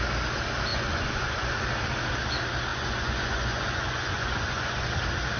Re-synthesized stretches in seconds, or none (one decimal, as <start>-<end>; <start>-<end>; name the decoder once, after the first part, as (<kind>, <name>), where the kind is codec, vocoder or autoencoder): 0.7-1.5 (vocoder, Vocos); 2.7-4.9